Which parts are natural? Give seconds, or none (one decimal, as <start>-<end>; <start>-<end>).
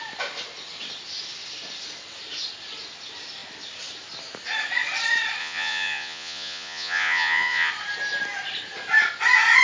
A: 0.0-5.4; 7.7-9.6